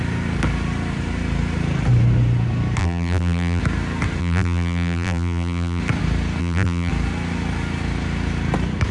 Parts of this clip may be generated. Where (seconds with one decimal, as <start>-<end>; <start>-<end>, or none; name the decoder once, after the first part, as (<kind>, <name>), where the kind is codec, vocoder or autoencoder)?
2.8-3.6 (vocoder, BigVGAN v2); 4.2-5.8; 6.4-6.9